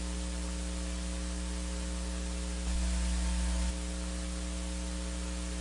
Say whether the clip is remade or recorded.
recorded